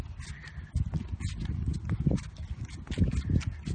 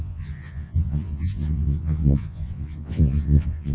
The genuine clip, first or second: first